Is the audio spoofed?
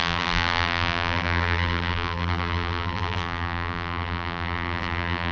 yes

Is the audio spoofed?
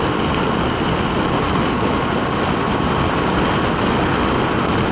no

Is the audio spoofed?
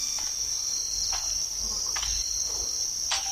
no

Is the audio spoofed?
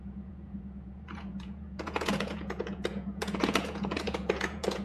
yes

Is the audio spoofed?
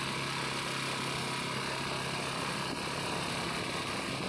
no